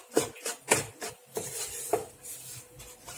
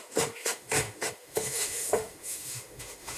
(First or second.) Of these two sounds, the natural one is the first